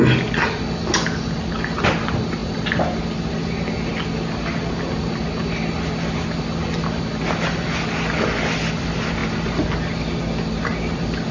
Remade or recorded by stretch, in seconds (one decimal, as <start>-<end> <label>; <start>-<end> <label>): 0.0-11.3 recorded